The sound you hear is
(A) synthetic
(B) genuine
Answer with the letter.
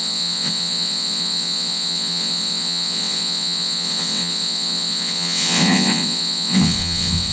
A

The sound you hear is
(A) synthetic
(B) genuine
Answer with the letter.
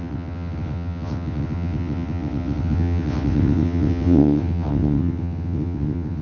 A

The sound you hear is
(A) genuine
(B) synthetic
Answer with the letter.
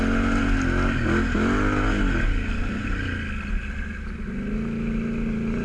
A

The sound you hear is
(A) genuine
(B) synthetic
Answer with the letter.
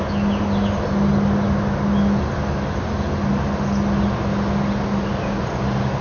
A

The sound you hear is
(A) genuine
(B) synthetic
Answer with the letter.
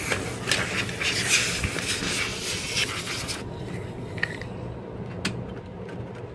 A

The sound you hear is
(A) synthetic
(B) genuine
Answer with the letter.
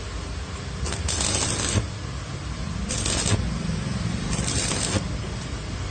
B